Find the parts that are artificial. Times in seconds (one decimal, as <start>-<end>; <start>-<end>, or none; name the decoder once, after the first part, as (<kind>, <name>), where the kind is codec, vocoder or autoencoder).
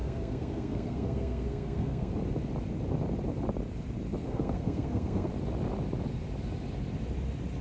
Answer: 0.0-2.1 (codec, SNAC); 4.2-5.3